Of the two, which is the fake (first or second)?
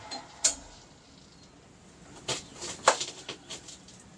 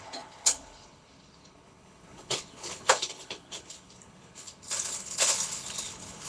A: second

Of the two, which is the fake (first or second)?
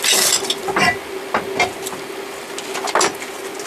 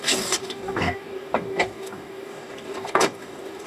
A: second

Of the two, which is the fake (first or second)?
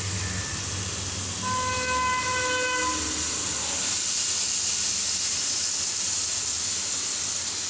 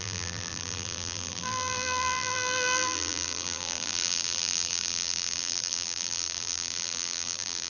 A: second